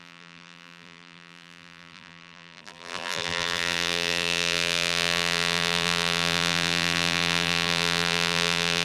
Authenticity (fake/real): fake